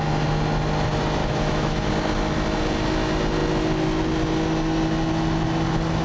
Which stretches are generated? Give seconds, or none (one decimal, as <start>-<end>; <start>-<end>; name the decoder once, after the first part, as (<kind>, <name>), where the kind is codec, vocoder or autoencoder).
1.2-1.9 (autoencoder, DAC-VAE)